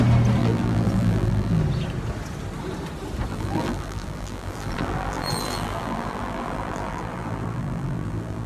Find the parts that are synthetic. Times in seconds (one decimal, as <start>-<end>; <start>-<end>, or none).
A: 0.4-1.6; 3.3-8.5

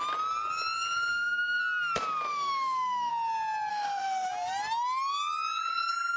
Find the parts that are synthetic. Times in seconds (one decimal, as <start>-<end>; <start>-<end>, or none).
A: 1.1-1.6; 2.3-3.1; 3.7-4.3

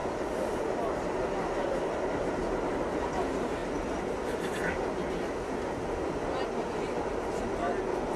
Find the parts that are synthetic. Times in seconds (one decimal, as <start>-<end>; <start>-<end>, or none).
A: none